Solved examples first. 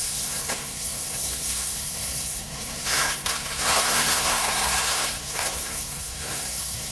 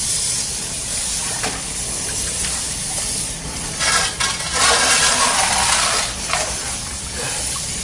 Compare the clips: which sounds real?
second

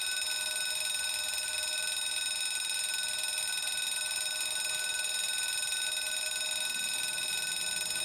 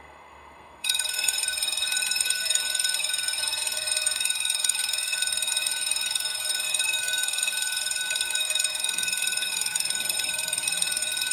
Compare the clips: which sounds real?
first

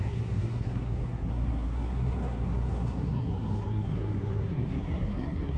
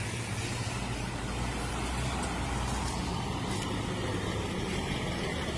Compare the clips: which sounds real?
second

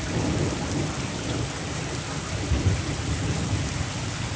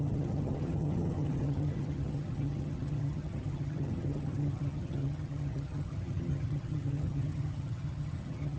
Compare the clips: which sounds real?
first